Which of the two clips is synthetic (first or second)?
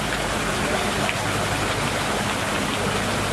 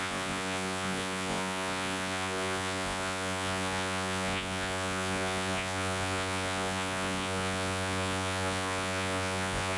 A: second